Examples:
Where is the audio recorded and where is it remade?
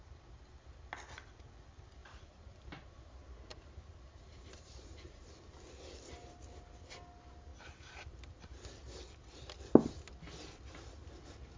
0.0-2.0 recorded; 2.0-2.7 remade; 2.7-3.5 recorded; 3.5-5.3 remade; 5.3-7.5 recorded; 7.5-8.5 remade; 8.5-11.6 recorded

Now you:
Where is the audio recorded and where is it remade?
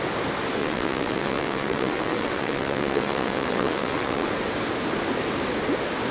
0.0-0.6 recorded; 0.6-4.3 remade; 4.3-6.1 recorded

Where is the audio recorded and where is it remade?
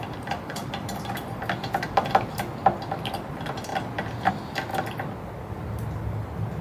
0.0-2.6 remade; 2.6-3.3 recorded; 3.3-3.7 remade; 3.7-4.3 recorded; 4.3-4.7 remade; 4.7-5.5 recorded; 5.5-6.6 remade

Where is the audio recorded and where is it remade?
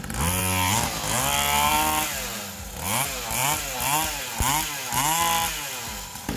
0.0-6.4 recorded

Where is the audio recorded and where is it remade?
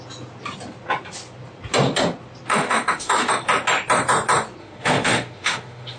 0.0-2.5 recorded; 2.5-3.3 remade; 3.3-4.6 recorded; 4.6-6.0 remade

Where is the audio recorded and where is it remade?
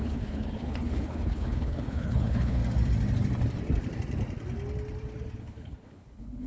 0.0-2.6 remade; 2.6-5.4 recorded; 5.4-6.5 remade